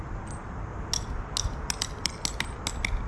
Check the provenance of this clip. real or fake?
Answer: real